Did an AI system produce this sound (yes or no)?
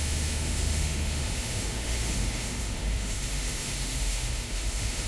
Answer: yes